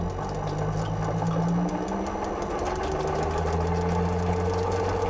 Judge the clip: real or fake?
real